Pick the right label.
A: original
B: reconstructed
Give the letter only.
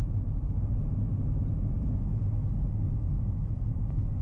A